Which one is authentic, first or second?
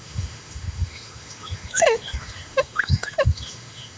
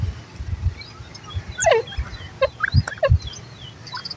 second